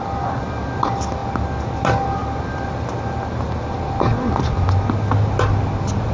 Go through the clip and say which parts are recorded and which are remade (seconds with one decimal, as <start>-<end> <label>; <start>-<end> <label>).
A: 0.0-6.1 recorded